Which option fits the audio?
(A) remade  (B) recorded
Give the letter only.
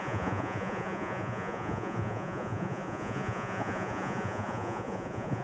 A